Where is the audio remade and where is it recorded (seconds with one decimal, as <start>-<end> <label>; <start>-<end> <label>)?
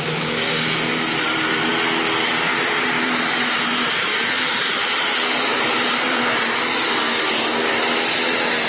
0.0-0.9 recorded; 0.9-1.7 remade; 1.7-2.5 recorded; 2.5-4.9 remade; 4.9-5.5 recorded; 5.5-6.2 remade; 6.2-8.7 recorded